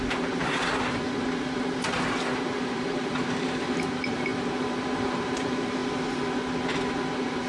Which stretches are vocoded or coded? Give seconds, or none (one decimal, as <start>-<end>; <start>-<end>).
0.0-5.8; 6.9-7.5